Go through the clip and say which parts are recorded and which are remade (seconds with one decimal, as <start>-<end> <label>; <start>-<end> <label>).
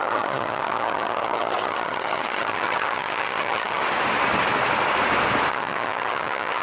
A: 0.0-3.8 remade; 3.8-5.5 recorded; 5.5-6.6 remade